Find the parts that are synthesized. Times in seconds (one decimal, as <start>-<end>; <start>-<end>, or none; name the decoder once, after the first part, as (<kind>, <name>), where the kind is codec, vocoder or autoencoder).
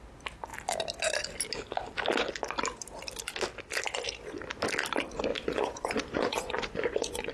5.3-7.3 (vocoder, Vocos)